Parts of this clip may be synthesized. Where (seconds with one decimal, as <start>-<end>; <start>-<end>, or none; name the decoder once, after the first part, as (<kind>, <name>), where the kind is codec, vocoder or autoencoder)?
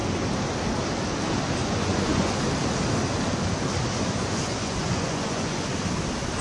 1.6-2.3 (vocoder, Vocos); 4.2-5.7